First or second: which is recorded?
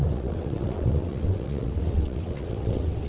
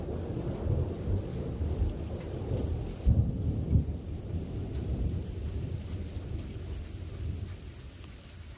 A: second